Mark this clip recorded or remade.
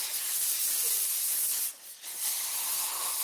recorded